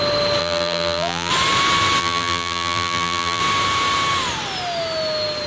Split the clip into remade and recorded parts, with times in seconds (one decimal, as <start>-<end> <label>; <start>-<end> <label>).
0.0-0.4 recorded; 0.4-1.3 remade; 1.3-2.0 recorded; 2.0-3.4 remade; 3.4-5.5 recorded